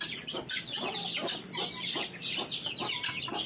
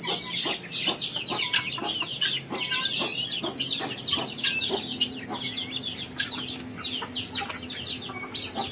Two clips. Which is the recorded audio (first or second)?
second